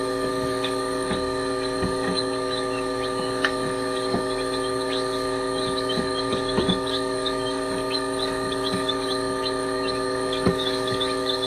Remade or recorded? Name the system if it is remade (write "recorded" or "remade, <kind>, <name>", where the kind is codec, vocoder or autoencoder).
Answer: remade, codec, DAC